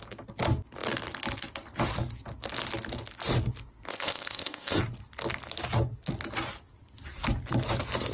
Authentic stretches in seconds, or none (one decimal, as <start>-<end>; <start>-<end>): 0.0-3.9; 4.8-8.1